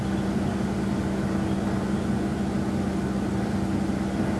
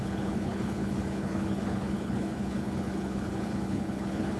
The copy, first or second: second